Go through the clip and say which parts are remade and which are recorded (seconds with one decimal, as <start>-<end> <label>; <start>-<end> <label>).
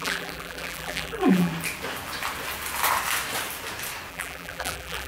0.0-1.5 remade; 1.5-4.1 recorded; 4.1-5.1 remade